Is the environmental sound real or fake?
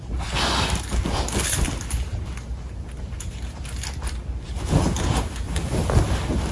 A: real